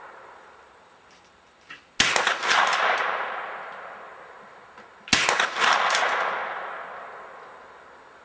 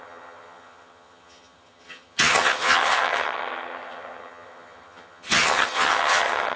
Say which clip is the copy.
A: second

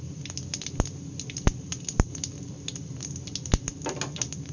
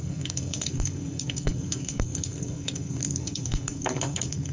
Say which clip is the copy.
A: second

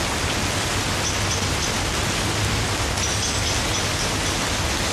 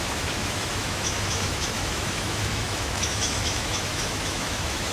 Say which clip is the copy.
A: second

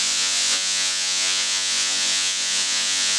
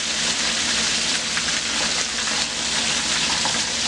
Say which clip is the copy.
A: first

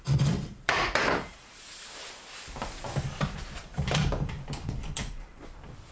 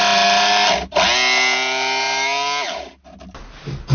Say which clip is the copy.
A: first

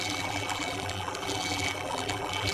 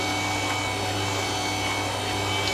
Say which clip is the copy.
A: first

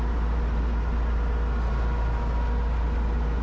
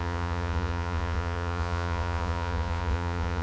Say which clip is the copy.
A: second